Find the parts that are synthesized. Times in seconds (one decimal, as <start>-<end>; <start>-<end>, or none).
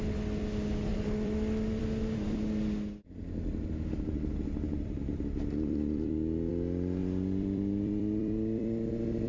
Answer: 0.9-1.8; 3.9-6.5; 7.0-8.9